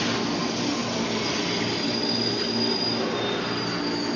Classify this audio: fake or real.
real